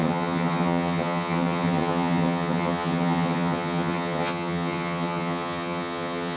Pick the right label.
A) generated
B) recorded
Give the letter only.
A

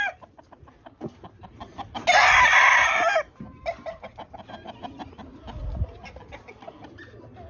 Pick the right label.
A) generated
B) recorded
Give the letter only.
B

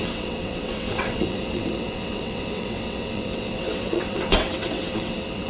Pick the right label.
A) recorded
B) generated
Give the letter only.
B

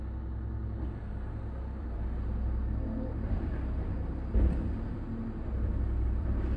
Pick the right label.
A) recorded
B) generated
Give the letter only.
B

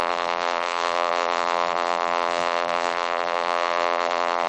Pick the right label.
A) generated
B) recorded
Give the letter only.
A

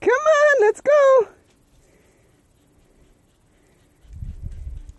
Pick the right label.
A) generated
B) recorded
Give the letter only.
B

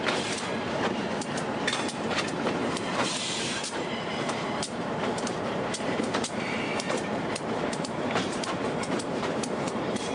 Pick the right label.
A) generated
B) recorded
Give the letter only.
A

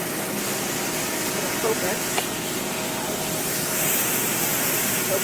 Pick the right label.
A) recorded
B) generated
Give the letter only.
A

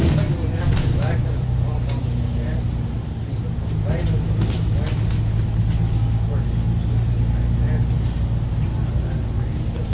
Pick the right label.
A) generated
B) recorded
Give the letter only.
B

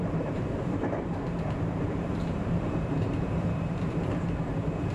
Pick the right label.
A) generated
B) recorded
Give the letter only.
A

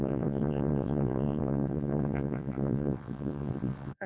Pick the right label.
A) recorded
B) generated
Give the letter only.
B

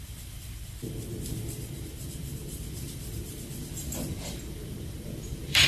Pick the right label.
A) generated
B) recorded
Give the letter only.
A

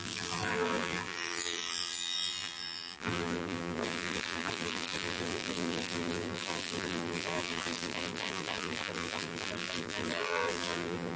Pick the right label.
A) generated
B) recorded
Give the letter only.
A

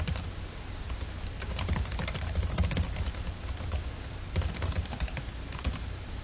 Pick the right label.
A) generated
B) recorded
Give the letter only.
B